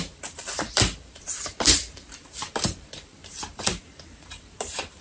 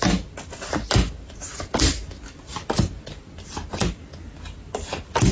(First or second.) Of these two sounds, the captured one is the second